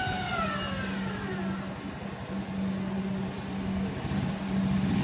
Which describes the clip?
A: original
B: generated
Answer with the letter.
A